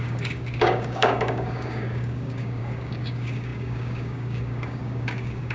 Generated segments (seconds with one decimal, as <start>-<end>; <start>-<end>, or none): 0.0-5.5